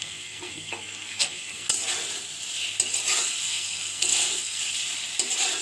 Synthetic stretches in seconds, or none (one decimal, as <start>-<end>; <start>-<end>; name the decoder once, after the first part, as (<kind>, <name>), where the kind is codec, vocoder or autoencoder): 0.0-1.7 (codec, SNAC); 3.4-4.6